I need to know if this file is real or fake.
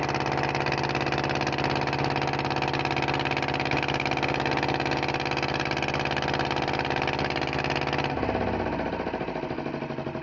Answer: real